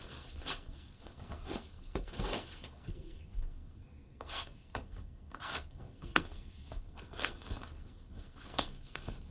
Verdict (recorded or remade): remade